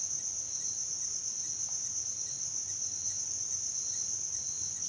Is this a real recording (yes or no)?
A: yes